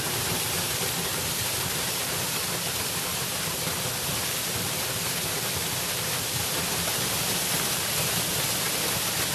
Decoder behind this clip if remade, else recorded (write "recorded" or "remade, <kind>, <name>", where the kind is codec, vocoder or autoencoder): recorded